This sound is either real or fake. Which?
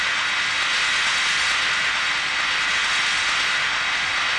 real